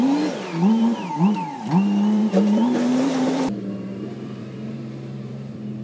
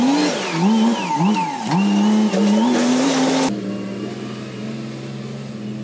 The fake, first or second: first